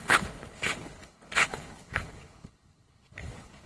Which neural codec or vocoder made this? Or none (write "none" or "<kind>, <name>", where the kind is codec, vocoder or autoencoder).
codec, HILCodec